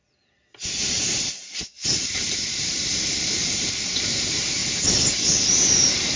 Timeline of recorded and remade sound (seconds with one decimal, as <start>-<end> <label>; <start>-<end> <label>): 0.0-4.6 remade; 4.6-5.7 recorded; 5.7-6.2 remade